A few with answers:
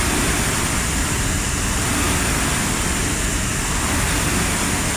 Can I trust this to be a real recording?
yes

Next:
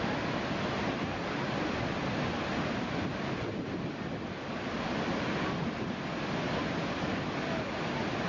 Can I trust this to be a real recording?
yes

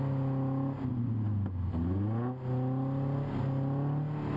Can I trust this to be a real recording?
yes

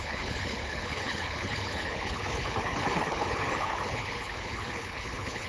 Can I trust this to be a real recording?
no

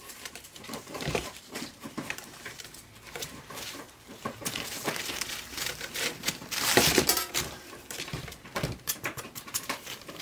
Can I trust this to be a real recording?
no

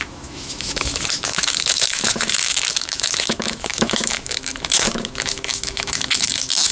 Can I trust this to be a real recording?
no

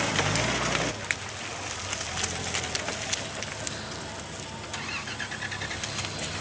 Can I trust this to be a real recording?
yes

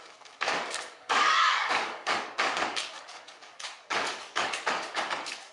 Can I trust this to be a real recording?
no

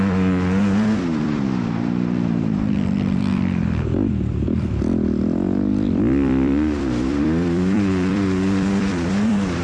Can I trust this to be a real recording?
no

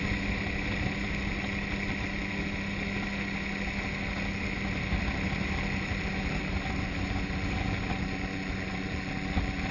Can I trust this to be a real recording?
yes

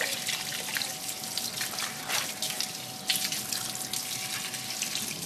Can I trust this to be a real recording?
yes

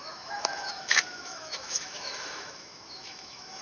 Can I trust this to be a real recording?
no